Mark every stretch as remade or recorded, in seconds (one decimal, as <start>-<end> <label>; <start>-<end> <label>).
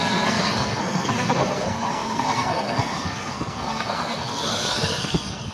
0.0-5.5 remade